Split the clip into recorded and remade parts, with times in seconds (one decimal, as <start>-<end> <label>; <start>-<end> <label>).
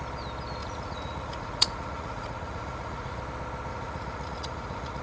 0.0-0.6 recorded; 0.6-3.2 remade; 3.2-3.7 recorded; 3.7-5.0 remade